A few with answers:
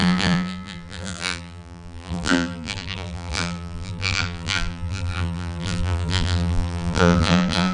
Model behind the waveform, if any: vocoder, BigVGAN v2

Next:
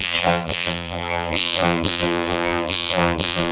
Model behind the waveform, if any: vocoder, BigVGAN v2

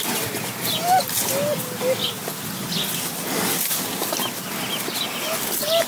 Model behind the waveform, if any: none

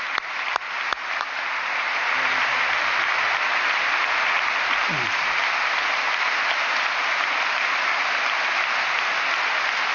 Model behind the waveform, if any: none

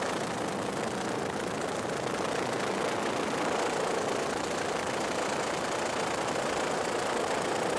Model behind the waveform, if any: none